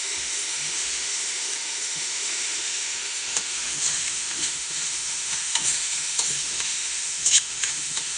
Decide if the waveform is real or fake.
fake